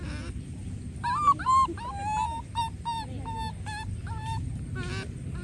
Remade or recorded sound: recorded